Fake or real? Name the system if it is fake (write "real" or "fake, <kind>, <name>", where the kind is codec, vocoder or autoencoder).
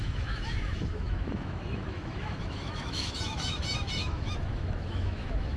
fake, autoencoder, DAC-VAE